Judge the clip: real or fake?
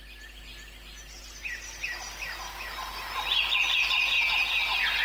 real